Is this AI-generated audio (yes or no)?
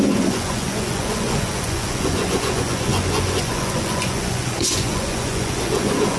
yes